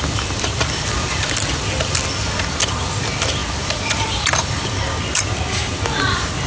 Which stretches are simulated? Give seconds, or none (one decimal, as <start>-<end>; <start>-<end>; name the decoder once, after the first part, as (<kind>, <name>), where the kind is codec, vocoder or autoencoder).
0.5-1.3 (vocoder, BigVGAN v2)